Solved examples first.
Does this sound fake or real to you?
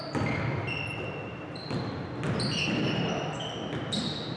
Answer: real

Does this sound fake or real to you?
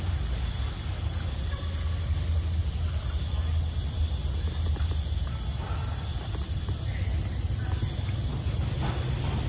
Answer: real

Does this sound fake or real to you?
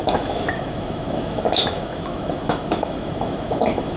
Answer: fake